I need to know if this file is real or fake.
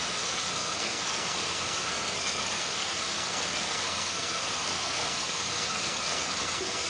fake